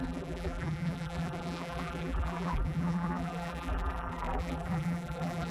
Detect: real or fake fake